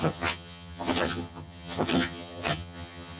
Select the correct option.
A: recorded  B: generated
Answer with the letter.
B